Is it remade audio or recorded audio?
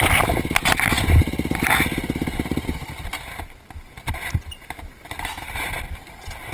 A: recorded